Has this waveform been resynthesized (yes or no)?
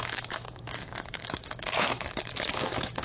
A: yes